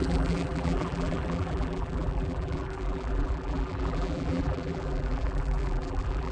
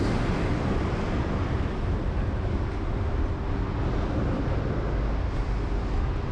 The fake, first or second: first